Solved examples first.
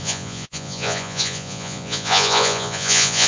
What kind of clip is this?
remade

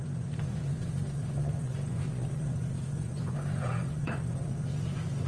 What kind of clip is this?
remade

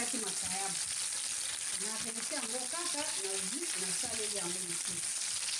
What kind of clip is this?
recorded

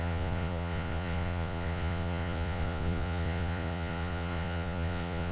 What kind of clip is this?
remade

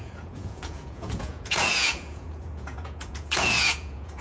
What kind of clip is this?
remade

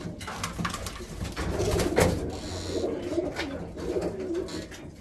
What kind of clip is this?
recorded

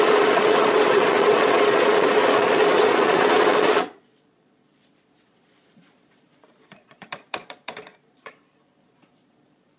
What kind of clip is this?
remade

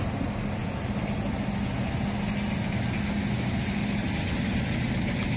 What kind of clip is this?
recorded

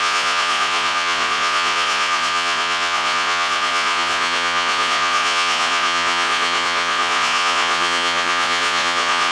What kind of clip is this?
remade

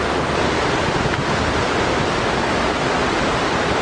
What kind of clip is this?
recorded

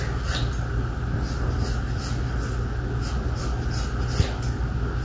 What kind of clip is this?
recorded